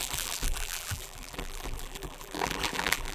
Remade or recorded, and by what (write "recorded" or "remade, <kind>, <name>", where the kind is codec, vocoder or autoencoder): remade, vocoder, BigVGAN v2